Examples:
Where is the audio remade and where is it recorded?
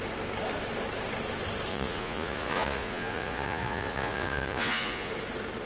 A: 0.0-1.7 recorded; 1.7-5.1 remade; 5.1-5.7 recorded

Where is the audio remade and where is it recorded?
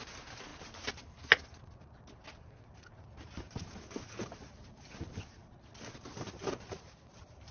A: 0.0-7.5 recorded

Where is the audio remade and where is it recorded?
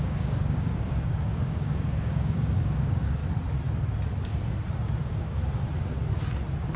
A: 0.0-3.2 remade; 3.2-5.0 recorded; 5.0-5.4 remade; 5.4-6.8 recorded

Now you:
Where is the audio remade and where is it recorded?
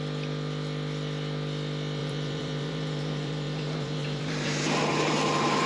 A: 0.0-2.0 recorded; 2.0-5.7 remade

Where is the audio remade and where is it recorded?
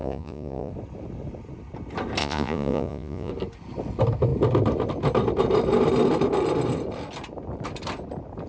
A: 0.0-0.7 remade; 0.7-2.2 recorded; 2.2-3.3 remade; 3.3-8.5 recorded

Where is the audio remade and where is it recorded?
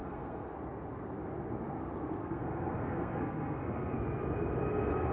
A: 0.0-0.5 remade; 0.5-2.2 recorded; 2.2-4.0 remade; 4.0-5.1 recorded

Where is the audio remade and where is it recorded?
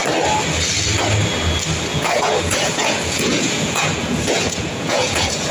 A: 0.0-1.9 recorded; 1.9-5.5 remade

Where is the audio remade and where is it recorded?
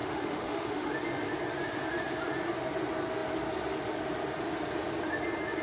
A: 0.0-0.9 remade; 0.9-5.6 recorded